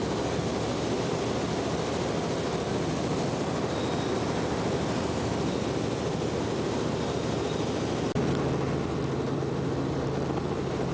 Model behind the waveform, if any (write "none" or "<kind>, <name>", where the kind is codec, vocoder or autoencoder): none